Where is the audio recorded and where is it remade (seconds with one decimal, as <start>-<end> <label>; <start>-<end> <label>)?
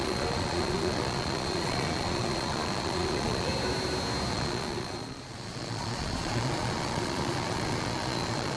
0.0-3.5 remade; 3.5-4.3 recorded; 4.3-8.6 remade